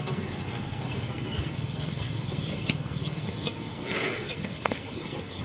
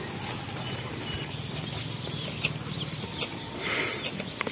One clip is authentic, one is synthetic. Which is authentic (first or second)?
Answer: second